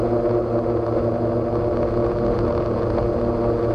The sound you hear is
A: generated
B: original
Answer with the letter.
B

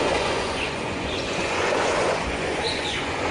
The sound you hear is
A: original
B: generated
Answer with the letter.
B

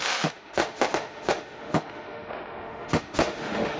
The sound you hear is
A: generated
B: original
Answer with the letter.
A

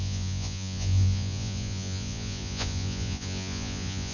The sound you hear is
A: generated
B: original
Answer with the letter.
A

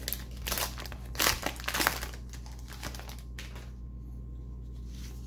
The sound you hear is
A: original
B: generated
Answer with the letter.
A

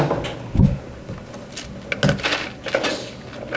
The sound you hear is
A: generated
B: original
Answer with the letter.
B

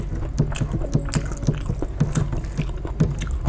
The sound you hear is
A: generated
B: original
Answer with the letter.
B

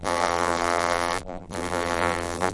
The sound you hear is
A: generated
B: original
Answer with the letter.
A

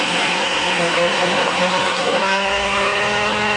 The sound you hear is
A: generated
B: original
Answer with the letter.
A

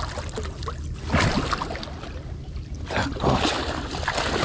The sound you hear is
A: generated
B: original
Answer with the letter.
B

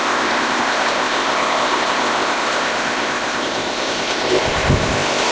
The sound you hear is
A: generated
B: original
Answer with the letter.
A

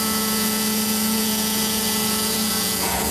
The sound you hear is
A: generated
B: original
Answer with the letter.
A